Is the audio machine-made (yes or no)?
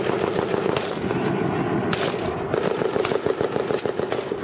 no